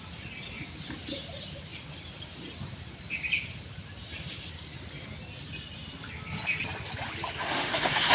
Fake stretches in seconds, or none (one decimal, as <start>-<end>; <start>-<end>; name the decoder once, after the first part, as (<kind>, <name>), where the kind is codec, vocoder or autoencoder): 7.4-8.1 (autoencoder, DAC-VAE)

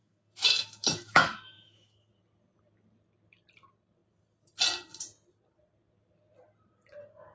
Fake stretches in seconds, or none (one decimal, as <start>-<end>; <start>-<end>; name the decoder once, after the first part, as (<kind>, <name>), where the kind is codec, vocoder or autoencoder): 0.0-2.1 (autoencoder, DAC-VAE)

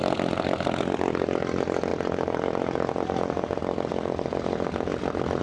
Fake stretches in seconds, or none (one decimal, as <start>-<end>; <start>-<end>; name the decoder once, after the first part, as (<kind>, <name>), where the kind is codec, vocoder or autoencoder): none

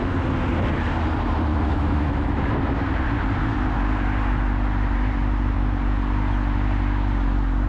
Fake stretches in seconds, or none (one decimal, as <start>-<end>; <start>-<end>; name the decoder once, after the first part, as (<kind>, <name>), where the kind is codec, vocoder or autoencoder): 1.5-2.5 (autoencoder, DAC-VAE)

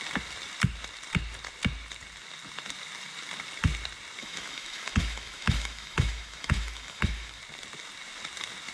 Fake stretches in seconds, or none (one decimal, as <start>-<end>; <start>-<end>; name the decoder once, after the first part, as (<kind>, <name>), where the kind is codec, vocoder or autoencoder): 4.2-7.4 (autoencoder, DAC-VAE)

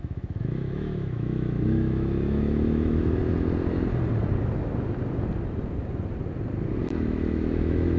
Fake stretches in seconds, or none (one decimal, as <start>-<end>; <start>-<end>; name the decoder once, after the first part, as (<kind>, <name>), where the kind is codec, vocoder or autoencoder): 0.0-3.2 (autoencoder, DAC-VAE); 6.8-8.0

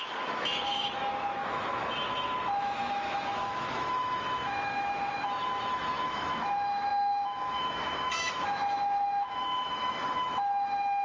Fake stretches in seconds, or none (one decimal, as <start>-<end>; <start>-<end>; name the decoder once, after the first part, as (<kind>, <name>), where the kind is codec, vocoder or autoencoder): 0.0-11.0 (autoencoder, DAC-VAE)

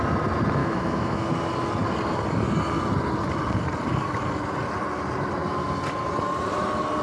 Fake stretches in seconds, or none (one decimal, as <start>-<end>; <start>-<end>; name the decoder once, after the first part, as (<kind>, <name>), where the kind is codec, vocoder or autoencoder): 0.6-1.3 (autoencoder, DAC-VAE)